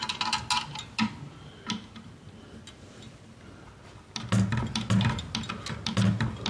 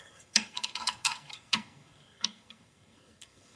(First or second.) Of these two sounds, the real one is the first